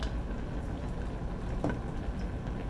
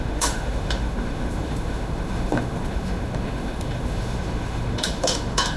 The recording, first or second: first